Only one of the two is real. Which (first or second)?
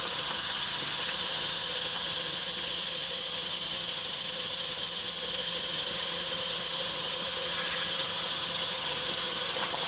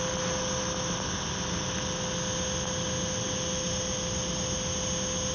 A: second